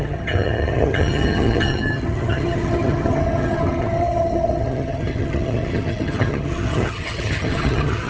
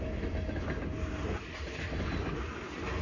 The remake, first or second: first